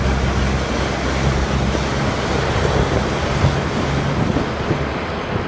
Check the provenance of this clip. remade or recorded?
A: recorded